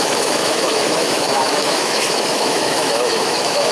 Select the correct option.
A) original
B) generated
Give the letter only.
B